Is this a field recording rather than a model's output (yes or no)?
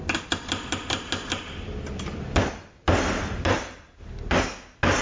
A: yes